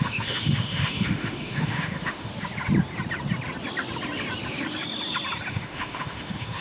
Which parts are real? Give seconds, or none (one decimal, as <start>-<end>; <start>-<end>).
2.3-5.5